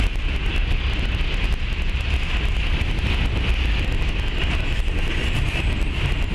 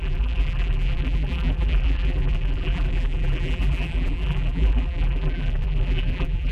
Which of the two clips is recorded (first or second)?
first